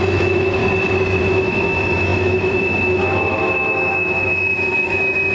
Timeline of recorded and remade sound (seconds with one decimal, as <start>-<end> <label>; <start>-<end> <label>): 0.0-0.6 remade; 0.6-1.2 recorded; 1.2-5.3 remade